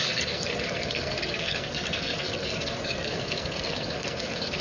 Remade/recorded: remade